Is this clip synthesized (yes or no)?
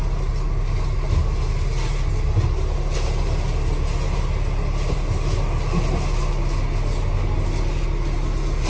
no